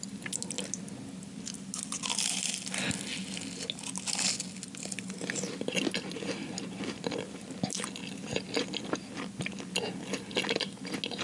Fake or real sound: real